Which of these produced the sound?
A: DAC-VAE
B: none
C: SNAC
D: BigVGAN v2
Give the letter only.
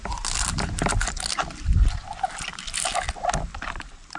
B